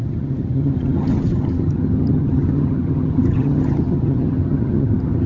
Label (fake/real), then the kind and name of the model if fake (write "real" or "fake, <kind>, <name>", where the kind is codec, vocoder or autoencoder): fake, vocoder, HiFi-GAN